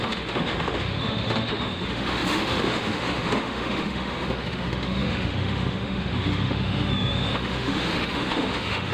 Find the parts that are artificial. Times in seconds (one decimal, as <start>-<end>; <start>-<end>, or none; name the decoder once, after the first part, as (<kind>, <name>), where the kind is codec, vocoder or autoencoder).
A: 0.0-8.9 (autoencoder, DAC-VAE)